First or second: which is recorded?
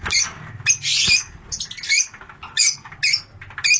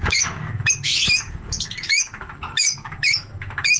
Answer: first